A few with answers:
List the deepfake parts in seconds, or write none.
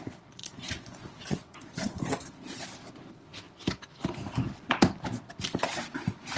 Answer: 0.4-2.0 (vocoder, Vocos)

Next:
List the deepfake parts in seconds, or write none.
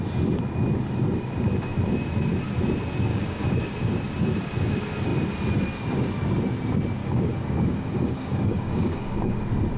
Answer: 3.1-3.9 (codec, DAC); 7.0-9.4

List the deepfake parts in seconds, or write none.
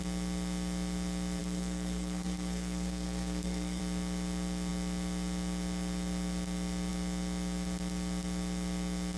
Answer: 1.4-3.8 (codec, SNAC)